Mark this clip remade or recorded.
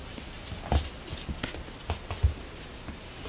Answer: recorded